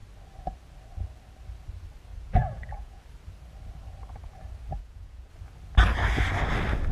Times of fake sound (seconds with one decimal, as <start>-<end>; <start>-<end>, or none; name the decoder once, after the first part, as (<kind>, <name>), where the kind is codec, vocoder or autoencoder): 2.1-3.0 (vocoder, Vocos); 4.8-5.3